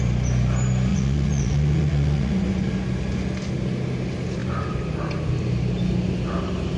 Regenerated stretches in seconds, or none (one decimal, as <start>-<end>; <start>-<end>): 0.9-2.7